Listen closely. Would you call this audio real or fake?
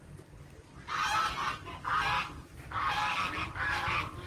real